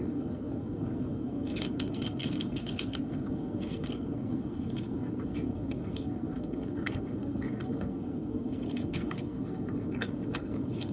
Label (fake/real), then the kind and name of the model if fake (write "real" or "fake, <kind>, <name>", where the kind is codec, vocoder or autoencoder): fake, codec, SNAC